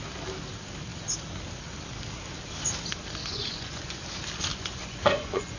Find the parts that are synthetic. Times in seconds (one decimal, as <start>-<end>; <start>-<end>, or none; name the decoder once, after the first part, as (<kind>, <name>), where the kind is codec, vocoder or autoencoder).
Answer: 3.2-4.0 (vocoder, Vocos); 4.5-5.6